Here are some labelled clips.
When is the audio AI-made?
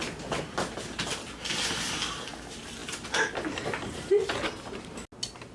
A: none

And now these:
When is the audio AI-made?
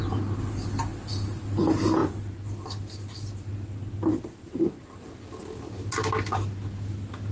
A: none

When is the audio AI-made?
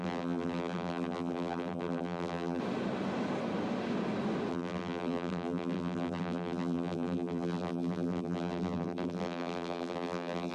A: 0.0-2.6 (vocoder, BigVGAN v2); 4.5-10.5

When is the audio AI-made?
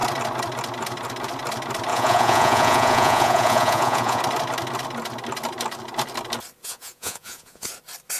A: 1.9-4.2 (vocoder, Vocos); 6.6-7.7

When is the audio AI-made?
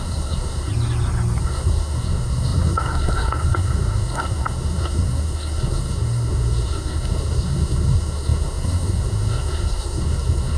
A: 0.0-0.7 (codec, SNAC); 1.4-10.6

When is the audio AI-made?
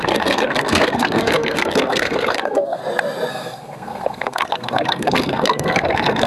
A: 0.0-2.8 (codec, SNAC); 3.3-6.3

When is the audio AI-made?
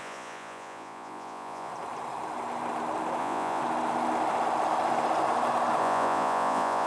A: 0.0-1.7 (vocoder, Vocos); 3.2-3.6; 5.8-6.9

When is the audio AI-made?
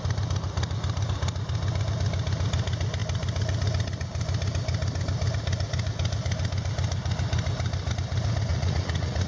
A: 8.5-9.3 (vocoder, Vocos)